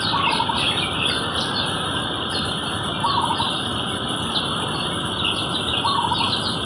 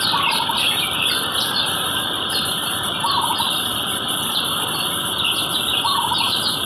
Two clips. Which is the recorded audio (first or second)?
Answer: first